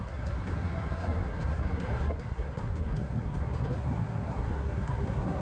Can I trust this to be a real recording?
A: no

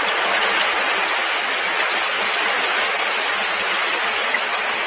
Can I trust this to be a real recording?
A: yes